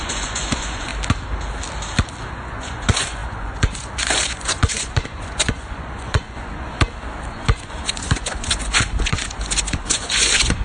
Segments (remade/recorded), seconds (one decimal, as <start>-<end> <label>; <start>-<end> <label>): 0.0-0.9 remade; 0.9-2.3 recorded; 2.3-6.7 remade; 6.7-7.3 recorded; 7.3-10.6 remade